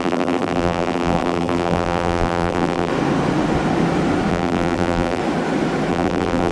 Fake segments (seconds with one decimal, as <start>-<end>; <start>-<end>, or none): 0.0-2.9; 4.3-5.2; 5.9-6.5

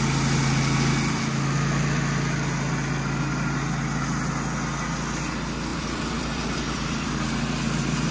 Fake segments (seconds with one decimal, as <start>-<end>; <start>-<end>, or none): 5.7-7.4

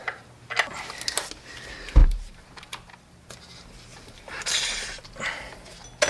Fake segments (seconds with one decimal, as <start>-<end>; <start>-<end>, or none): 2.0-3.3; 3.9-4.8

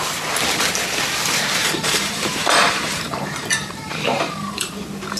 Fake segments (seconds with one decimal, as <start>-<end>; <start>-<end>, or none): 1.6-4.7